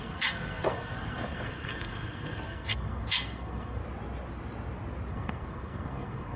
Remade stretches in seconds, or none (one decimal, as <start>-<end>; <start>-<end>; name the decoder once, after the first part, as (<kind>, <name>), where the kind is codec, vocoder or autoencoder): 0.0-3.8 (codec, SNAC); 5.1-6.4